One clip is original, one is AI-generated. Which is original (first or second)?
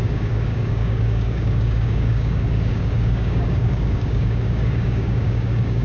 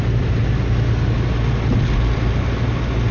second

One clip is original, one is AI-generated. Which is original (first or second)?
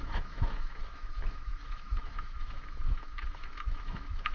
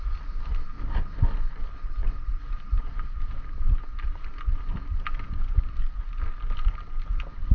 second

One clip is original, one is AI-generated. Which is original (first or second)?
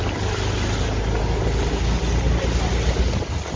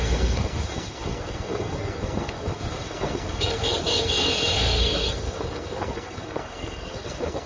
first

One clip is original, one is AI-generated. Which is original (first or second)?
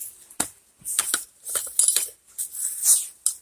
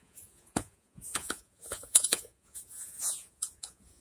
first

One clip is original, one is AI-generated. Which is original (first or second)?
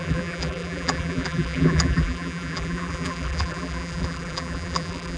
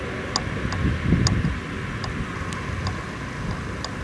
second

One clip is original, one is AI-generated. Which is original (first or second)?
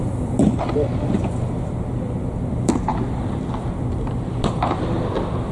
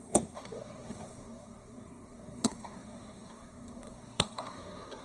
first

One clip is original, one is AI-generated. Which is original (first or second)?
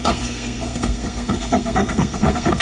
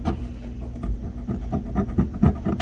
second